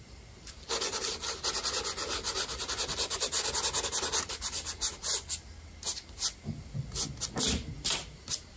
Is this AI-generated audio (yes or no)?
no